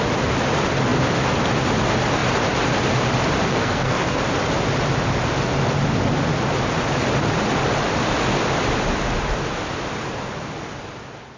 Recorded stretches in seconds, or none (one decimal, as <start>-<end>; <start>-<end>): 0.0-3.4; 4.2-11.4